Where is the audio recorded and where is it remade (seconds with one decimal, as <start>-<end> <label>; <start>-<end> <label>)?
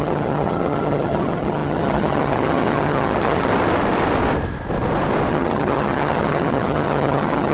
0.0-3.5 remade; 3.5-5.3 recorded; 5.3-7.5 remade